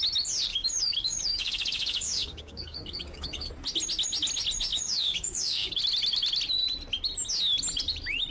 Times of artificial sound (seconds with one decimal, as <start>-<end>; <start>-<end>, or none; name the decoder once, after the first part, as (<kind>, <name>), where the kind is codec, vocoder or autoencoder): 0.5-3.5 (codec, DAC); 4.7-5.8